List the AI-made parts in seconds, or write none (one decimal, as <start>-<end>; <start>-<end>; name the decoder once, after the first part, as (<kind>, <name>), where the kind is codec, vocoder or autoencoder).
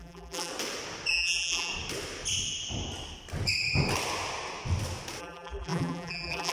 0.0-0.5 (vocoder, BigVGAN v2); 1.1-1.7; 5.2-6.5